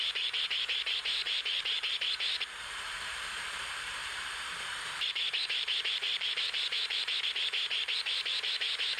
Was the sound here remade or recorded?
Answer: remade